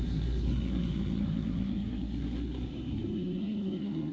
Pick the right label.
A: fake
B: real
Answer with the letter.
A